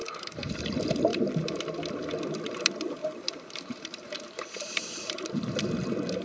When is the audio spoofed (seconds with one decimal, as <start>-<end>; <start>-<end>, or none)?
0.0-0.6; 1.1-1.6; 3.0-5.3